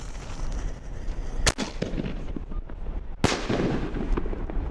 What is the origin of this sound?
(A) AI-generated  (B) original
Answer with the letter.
B